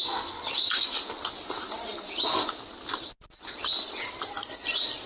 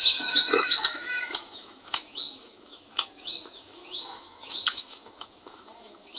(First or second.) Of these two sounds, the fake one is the second